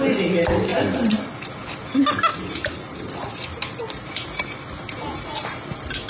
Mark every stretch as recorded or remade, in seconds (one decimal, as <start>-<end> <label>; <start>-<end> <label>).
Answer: 0.0-2.3 recorded; 2.3-4.1 remade; 4.1-6.1 recorded